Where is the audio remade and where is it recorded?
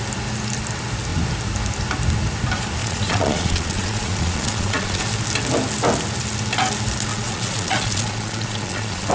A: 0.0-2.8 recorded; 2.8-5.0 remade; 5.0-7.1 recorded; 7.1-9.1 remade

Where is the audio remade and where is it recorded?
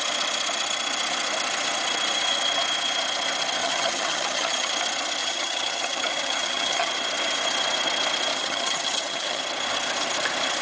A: 0.0-3.6 recorded; 3.6-4.7 remade; 4.7-5.2 recorded; 5.2-6.9 remade; 6.9-8.3 recorded; 8.3-9.4 remade; 9.4-10.6 recorded